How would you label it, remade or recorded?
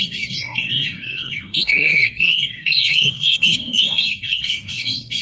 remade